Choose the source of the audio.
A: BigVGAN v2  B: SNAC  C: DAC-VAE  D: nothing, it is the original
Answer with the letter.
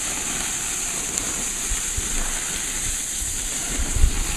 D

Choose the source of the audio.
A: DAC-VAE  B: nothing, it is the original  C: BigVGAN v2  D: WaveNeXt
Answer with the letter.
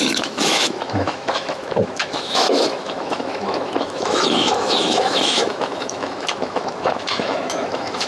A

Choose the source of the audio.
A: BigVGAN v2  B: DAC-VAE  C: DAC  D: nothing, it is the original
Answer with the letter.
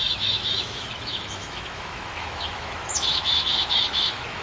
B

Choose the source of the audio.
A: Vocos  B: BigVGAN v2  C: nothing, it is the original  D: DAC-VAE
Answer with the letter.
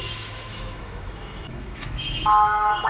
D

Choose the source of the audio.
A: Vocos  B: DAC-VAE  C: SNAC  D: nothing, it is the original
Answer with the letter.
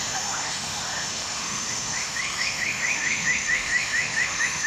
B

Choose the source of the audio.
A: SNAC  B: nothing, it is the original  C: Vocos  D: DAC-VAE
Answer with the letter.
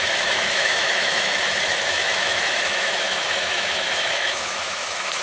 D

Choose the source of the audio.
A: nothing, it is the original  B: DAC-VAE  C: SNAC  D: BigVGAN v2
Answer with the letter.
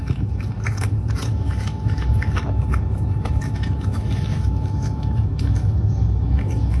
B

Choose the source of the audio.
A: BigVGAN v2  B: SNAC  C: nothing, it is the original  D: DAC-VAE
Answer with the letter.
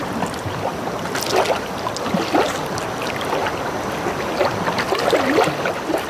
C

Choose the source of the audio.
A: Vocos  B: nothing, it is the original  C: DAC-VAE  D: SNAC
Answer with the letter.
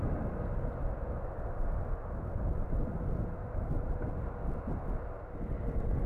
B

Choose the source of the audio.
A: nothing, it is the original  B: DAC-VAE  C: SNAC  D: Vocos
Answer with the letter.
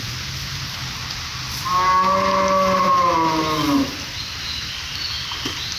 A